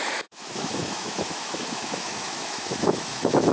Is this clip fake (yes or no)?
yes